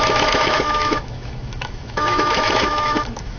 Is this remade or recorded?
remade